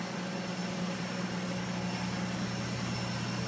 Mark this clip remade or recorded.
recorded